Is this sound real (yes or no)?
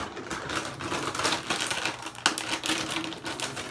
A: yes